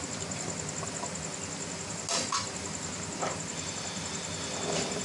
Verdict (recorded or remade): recorded